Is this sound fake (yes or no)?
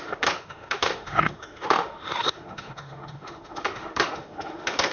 yes